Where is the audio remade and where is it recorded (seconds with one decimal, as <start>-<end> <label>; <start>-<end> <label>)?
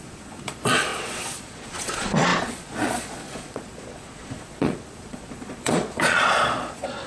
0.0-7.1 remade